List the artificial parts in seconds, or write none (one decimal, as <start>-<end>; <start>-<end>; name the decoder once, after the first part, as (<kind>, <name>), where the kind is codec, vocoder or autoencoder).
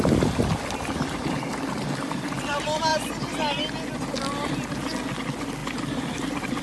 none